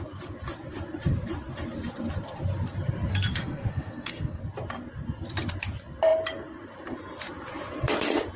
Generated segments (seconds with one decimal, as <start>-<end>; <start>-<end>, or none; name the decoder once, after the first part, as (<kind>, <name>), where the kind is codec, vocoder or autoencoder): 3.1-4.4 (codec, SNAC)